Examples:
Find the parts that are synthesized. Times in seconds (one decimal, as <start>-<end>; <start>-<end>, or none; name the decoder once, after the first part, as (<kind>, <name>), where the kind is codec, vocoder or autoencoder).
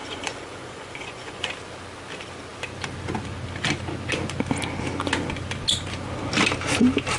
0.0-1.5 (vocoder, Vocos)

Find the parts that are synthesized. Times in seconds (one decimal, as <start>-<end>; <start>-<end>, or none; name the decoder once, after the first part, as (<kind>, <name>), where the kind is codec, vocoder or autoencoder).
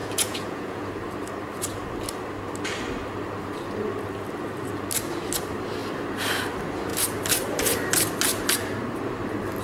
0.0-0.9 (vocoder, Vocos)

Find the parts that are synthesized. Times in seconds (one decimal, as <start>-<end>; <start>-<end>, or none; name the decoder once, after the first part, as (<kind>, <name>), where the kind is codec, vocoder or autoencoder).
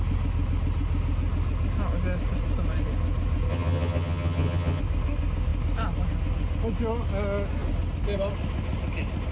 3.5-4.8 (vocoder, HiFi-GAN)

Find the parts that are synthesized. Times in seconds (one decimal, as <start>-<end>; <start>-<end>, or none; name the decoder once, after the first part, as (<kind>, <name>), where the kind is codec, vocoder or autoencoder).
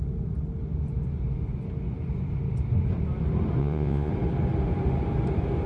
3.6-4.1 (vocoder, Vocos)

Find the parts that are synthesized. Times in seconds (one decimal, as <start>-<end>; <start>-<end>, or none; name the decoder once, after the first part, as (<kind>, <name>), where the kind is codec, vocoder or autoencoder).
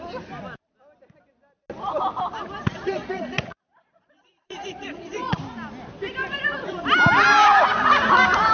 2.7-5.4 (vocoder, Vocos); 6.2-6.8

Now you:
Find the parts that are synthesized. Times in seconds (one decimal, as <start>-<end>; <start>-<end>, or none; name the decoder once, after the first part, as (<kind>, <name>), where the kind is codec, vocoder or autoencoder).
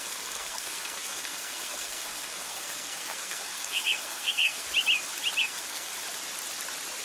0.0-4.7 (codec, SNAC); 5.4-5.9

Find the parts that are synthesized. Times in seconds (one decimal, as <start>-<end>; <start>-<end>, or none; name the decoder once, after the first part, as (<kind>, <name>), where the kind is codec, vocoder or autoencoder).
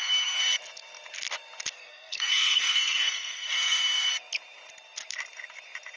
0.0-0.4 (codec, SNAC); 1.7-4.1